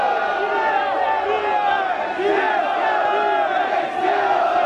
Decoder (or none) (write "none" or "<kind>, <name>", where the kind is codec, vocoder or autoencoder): none